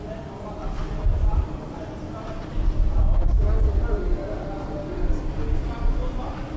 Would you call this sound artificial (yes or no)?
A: no